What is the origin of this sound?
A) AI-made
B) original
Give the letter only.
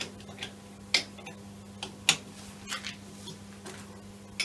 B